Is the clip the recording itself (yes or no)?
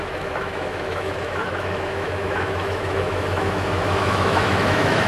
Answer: no